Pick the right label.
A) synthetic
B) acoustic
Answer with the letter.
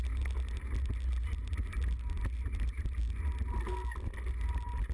B